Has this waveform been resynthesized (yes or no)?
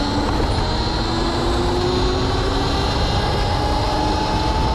no